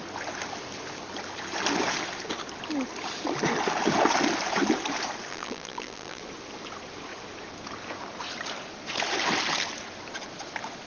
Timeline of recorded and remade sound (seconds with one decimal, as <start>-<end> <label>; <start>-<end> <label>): 0.0-5.3 recorded; 5.3-6.2 remade; 6.2-10.9 recorded